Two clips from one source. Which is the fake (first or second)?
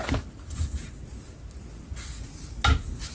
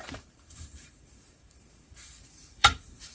second